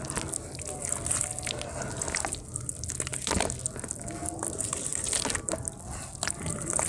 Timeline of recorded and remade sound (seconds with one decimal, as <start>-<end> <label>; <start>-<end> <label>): 0.0-6.9 recorded